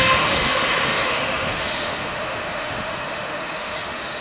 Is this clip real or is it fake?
fake